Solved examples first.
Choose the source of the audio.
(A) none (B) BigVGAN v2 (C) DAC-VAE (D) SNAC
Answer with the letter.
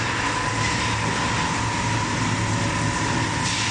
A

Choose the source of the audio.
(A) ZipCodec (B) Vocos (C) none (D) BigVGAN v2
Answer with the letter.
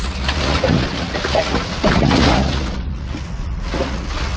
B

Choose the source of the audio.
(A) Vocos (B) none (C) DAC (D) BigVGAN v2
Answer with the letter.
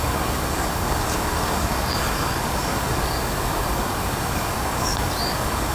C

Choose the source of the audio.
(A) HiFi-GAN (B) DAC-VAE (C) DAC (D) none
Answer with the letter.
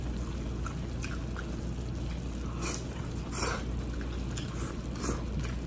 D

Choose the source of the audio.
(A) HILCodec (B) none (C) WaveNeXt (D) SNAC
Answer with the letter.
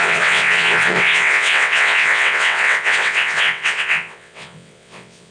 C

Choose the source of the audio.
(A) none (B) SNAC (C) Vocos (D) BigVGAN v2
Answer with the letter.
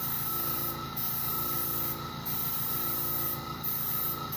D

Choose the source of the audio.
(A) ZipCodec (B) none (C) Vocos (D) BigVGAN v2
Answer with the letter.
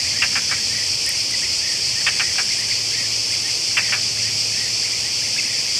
B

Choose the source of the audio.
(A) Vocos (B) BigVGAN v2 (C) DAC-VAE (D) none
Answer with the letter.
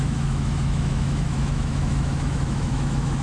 C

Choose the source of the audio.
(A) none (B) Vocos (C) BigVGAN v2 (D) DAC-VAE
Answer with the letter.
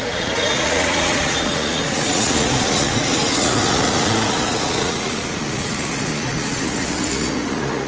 B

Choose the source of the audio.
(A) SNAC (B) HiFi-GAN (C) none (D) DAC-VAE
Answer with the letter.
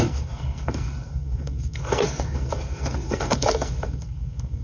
A